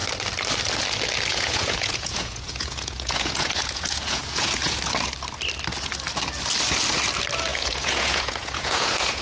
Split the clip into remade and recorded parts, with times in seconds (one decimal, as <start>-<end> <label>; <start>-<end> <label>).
0.0-1.3 recorded; 1.3-4.8 remade; 4.8-7.5 recorded; 7.5-9.2 remade